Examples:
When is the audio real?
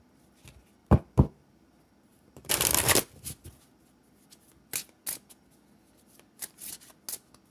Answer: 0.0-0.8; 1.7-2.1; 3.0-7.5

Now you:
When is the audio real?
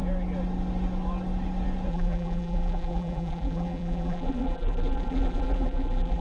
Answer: 0.0-1.9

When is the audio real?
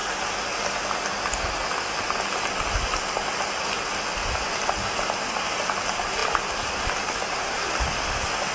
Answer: 0.0-6.2; 8.1-8.5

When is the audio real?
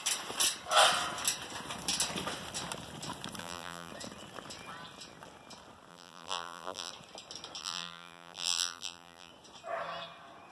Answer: 0.0-3.4; 3.9-5.9; 6.9-7.6; 9.3-10.5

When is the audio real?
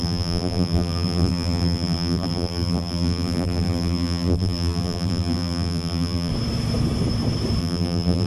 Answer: 6.3-7.6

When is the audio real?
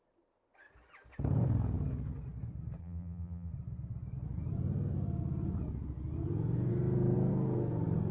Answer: 0.0-2.8; 3.5-8.1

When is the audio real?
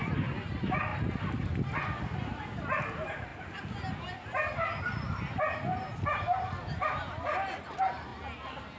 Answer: 0.0-0.9; 2.0-8.8